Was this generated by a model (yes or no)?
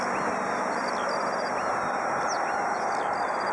no